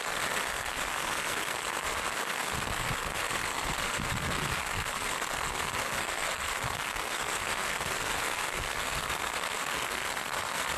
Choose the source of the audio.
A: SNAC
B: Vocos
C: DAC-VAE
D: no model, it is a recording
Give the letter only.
A